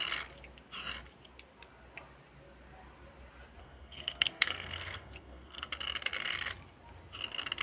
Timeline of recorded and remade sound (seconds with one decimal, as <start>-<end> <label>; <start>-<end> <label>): 0.0-3.6 recorded; 3.6-5.7 remade; 5.7-7.6 recorded